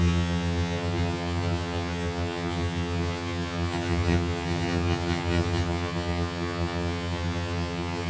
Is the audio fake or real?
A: fake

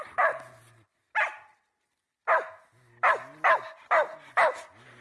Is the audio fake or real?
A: real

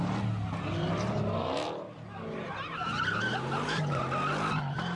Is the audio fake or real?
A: real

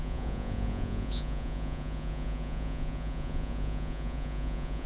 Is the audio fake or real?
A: fake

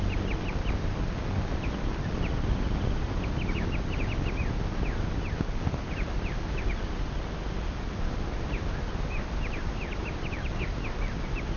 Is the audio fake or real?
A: real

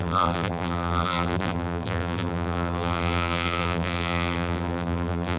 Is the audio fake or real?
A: fake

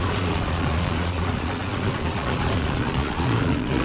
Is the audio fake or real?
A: fake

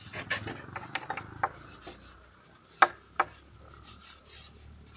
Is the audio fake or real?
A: real